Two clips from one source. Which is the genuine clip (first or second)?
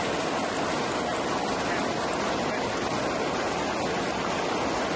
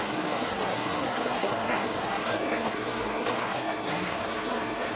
first